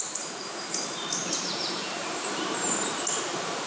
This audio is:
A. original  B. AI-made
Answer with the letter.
B